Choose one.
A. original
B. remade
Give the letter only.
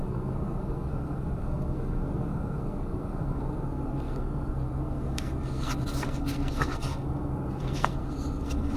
B